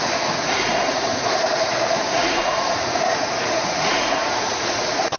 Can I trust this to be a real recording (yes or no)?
no